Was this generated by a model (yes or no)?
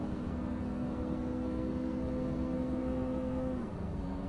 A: yes